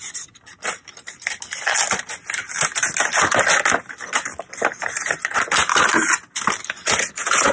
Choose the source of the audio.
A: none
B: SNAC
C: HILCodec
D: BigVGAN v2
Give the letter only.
A